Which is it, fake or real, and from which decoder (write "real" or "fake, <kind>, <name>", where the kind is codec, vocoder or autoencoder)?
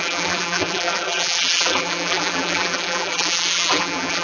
fake, vocoder, BigVGAN v2